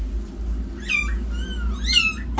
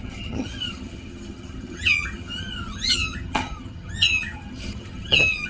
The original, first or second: first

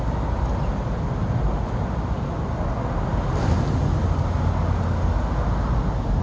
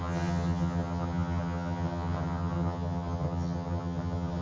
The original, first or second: first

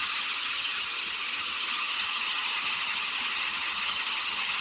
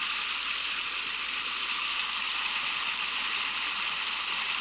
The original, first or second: second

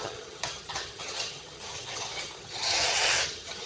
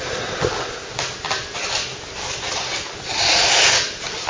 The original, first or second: second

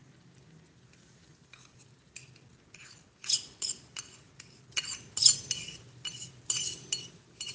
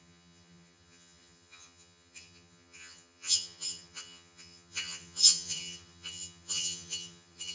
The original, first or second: first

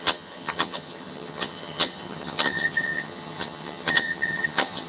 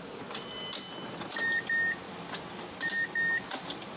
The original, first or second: second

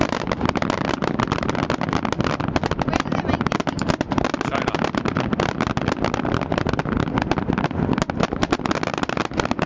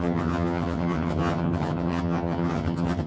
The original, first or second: first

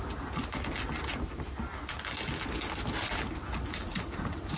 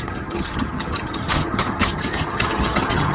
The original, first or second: first